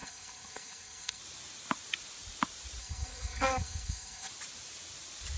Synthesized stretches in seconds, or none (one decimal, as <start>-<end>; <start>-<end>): 0.0-1.2; 2.8-4.3